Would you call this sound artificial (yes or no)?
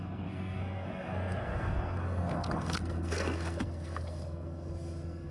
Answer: yes